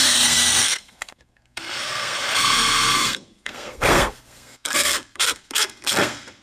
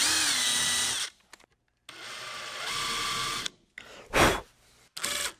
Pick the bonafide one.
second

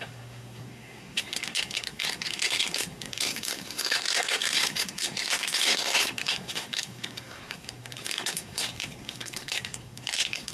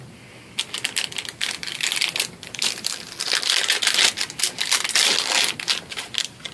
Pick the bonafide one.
second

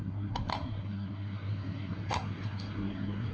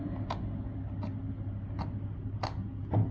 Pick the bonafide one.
second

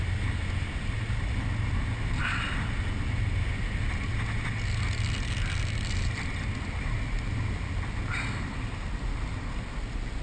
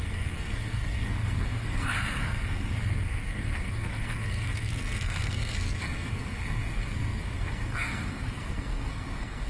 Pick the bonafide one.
first